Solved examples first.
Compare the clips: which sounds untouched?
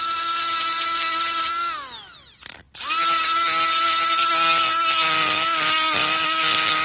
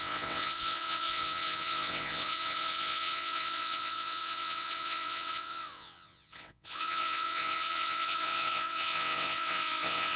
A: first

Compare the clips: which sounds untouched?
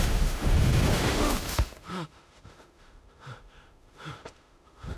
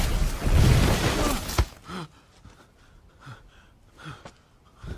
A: second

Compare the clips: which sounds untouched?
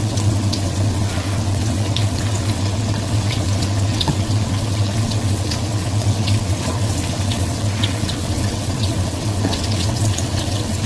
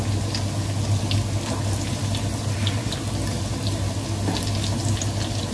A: second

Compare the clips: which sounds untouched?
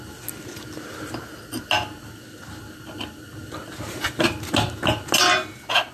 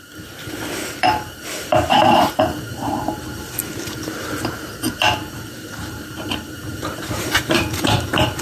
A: first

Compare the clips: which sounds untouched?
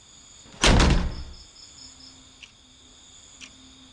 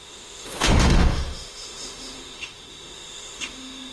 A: first